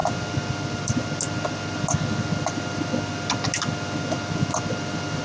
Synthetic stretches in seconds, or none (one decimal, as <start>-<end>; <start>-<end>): none